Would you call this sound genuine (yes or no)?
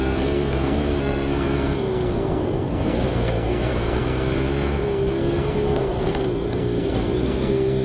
no